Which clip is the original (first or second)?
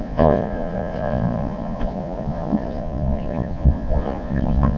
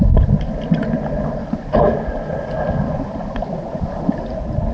second